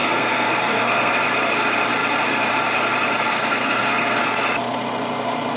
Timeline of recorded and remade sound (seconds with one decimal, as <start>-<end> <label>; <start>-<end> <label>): 0.0-1.1 remade; 1.1-3.3 recorded; 3.3-4.2 remade; 4.2-5.6 recorded